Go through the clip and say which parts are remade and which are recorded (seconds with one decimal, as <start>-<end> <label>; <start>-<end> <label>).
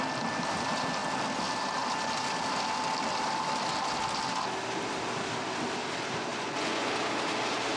0.0-6.3 recorded; 6.3-6.9 remade; 6.9-7.8 recorded